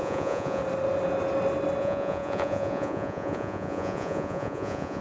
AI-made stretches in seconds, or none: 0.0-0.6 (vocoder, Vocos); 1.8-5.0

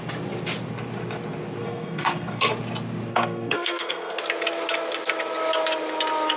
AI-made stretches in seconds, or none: 1.6-2.5 (codec, SNAC); 3.1-4.2

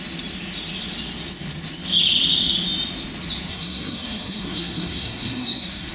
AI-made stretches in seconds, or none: 3.5-5.9 (codec, SNAC)

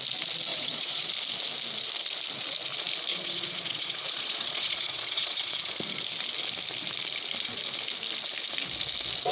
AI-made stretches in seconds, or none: 0.5-1.1 (vocoder, Vocos); 3.1-5.7

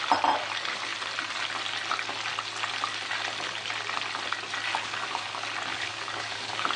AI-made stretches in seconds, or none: 4.7-5.3 (codec, DAC); 5.7-6.8

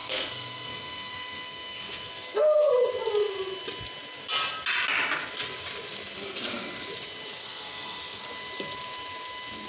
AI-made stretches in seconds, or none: 0.0-2.7 (codec, SNAC); 7.4-8.2

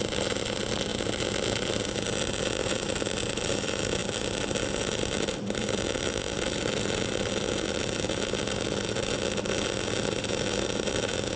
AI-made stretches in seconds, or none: none